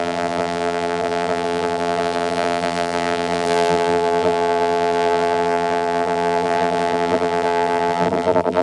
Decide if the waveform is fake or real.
fake